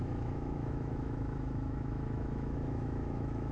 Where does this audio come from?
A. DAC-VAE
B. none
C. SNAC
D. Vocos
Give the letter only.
A